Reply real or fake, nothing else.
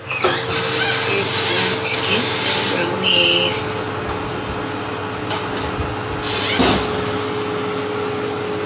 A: real